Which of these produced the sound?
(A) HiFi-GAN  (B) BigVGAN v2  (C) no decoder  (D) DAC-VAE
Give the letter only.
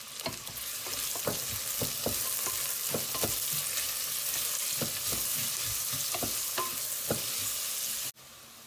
C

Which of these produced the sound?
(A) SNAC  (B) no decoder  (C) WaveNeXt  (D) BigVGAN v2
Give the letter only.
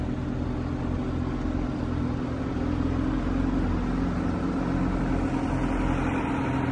B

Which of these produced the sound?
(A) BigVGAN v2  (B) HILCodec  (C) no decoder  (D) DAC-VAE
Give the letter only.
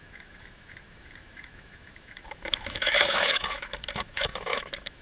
D